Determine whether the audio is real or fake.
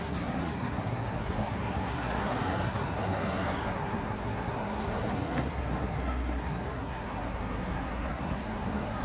fake